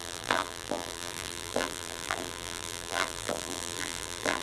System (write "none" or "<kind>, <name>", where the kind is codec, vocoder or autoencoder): vocoder, BigVGAN v2